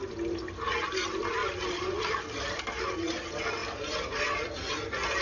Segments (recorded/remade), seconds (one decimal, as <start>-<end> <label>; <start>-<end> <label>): 0.0-1.4 recorded; 1.4-2.9 remade; 2.9-3.6 recorded; 3.6-4.7 remade; 4.7-5.2 recorded